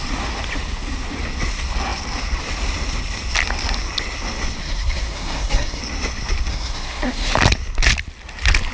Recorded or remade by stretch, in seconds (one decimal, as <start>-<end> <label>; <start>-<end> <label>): 0.0-4.6 recorded; 4.6-5.8 remade; 5.8-6.5 recorded; 6.5-7.3 remade; 7.3-8.7 recorded